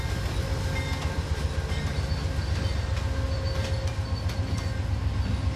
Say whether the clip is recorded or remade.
recorded